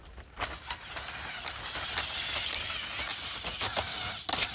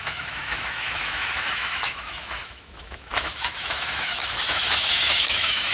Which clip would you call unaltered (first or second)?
first